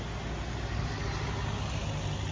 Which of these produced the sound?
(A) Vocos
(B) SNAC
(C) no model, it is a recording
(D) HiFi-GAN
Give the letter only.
C